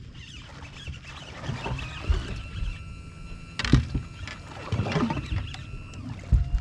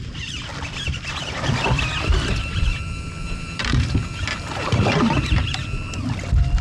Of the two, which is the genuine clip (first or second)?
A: first